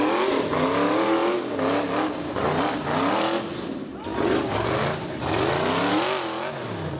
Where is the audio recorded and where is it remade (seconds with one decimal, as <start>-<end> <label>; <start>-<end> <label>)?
0.0-7.0 recorded